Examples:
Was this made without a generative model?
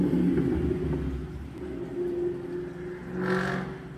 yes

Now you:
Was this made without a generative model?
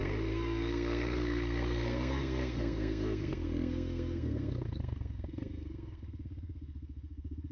no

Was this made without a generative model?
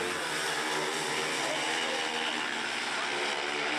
yes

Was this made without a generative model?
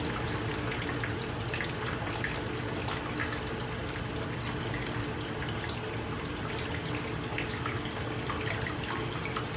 yes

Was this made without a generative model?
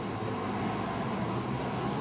yes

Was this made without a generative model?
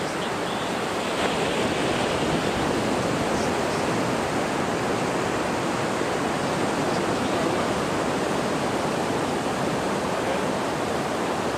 yes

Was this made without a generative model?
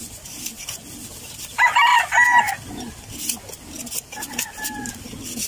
yes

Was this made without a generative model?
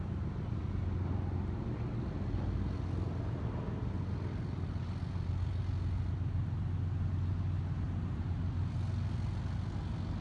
yes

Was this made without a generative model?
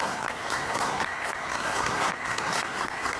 no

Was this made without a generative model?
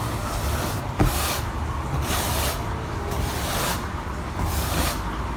yes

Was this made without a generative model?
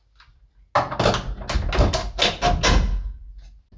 yes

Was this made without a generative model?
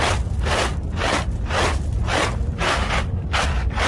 yes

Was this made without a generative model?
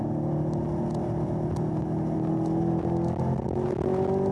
yes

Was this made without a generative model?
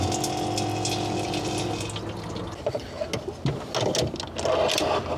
yes